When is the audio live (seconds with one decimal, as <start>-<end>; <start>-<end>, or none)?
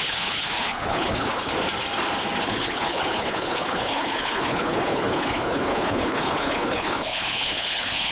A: 1.5-2.4